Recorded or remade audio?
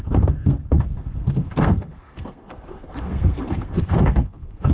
remade